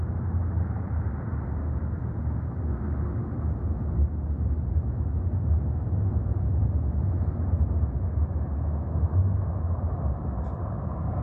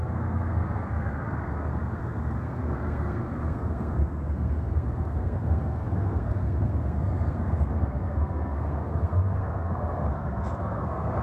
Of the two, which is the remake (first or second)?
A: second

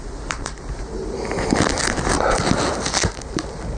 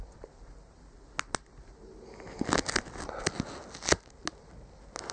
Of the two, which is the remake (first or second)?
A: first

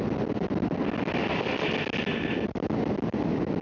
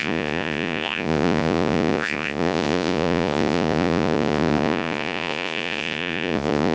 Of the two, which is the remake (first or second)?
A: second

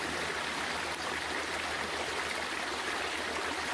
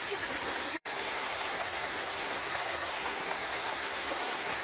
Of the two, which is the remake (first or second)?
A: second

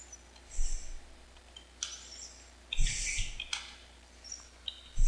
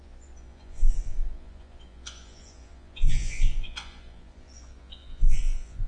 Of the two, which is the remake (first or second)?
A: second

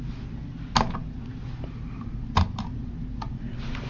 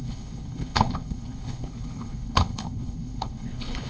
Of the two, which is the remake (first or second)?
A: second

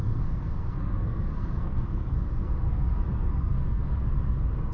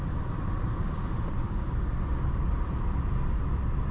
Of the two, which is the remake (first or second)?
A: first